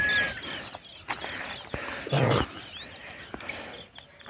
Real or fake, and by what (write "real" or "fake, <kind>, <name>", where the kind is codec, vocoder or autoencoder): real